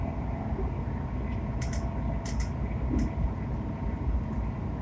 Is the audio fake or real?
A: real